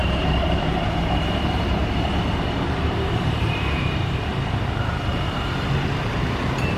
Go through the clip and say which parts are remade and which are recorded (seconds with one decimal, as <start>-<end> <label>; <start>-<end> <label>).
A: 0.0-1.8 remade; 1.8-2.9 recorded; 2.9-4.3 remade; 4.3-6.0 recorded; 6.0-6.8 remade